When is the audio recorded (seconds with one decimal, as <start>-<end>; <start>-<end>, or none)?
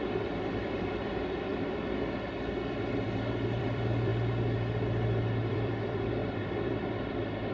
1.5-2.9; 4.1-5.5